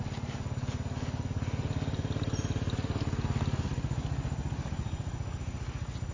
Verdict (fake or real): real